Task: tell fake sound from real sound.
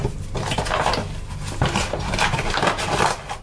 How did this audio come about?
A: real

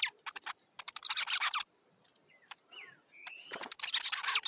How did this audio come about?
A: real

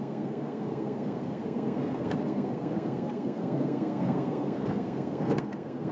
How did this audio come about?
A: fake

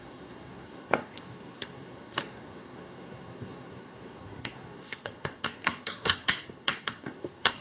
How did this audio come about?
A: fake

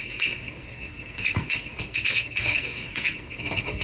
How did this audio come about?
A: fake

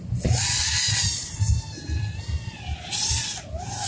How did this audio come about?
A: real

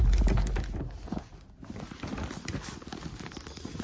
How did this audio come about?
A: real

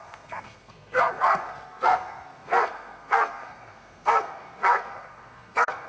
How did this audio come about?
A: fake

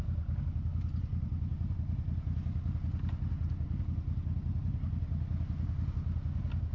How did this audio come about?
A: real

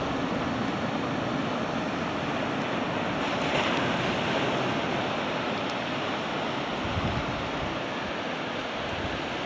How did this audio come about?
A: real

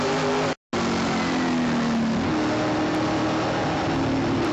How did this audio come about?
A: real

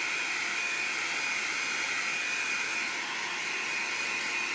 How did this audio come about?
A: real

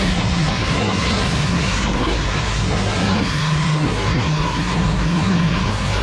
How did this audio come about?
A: fake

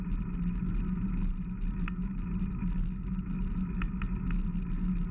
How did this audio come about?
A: real